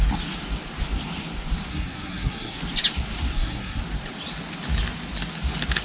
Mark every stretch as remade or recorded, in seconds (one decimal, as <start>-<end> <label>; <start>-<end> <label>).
0.0-1.7 recorded; 1.7-2.6 remade; 2.6-3.3 recorded; 3.3-3.8 remade; 3.8-5.8 recorded